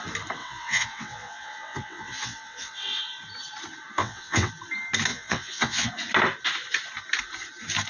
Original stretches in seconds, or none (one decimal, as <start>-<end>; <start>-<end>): 0.0-0.4; 3.0-4.0; 4.5-5.1; 5.9-7.9